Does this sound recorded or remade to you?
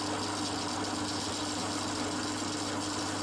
recorded